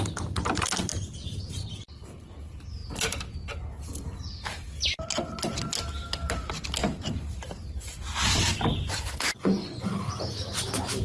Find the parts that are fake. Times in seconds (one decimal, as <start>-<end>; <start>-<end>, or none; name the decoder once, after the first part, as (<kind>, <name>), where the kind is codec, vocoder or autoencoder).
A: 9.3-9.9 (vocoder, Vocos)